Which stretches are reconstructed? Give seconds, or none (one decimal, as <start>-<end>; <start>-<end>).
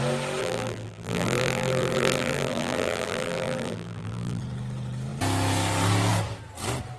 0.4-4.4